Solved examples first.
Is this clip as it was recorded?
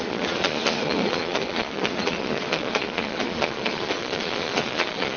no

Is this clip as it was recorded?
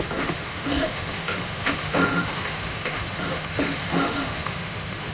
no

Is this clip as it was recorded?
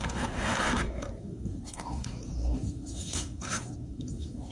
no